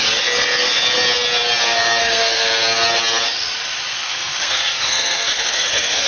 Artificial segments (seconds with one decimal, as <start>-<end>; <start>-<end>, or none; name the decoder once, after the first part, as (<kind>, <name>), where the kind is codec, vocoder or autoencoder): 2.0-2.5 (codec, SNAC); 3.9-6.1